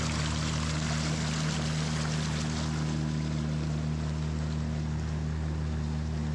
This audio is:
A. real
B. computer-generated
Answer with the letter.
A